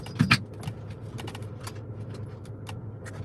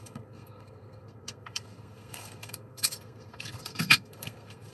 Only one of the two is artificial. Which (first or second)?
second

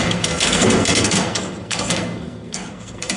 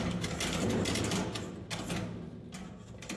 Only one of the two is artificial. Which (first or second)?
first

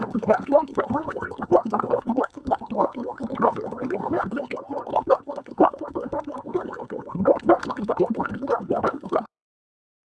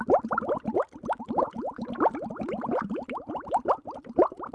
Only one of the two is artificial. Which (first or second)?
first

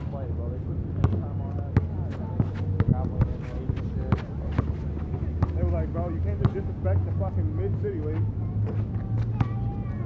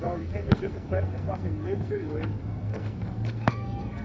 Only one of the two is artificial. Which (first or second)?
second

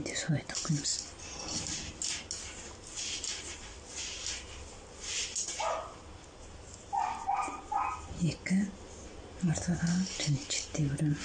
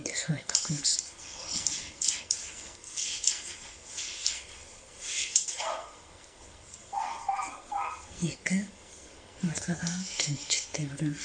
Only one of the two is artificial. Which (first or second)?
second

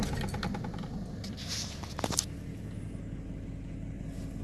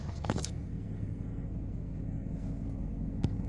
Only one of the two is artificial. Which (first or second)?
second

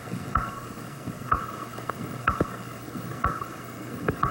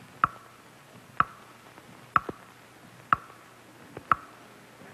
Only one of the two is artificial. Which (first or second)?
first